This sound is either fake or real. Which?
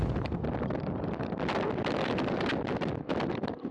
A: fake